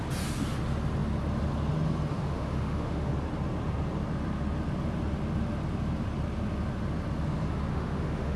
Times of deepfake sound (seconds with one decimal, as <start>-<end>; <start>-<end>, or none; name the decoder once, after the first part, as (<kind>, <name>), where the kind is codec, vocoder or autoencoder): 2.1-3.1 (autoencoder, DAC-VAE); 7.7-8.4